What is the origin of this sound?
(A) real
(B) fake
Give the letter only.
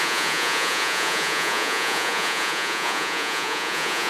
B